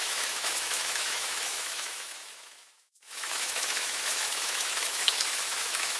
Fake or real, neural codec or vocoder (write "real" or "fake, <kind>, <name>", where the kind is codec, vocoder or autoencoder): fake, autoencoder, DAC-VAE